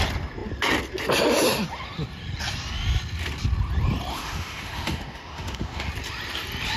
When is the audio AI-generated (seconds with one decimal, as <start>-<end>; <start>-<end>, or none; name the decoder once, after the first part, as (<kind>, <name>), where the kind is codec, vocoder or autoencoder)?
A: 4.1-5.9 (autoencoder, DAC-VAE)